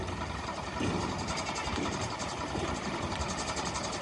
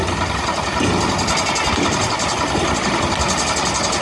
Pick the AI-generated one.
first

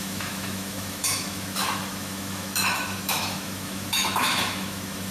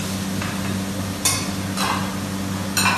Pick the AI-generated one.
first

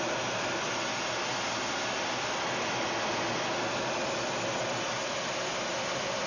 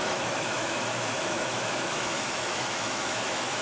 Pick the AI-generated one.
second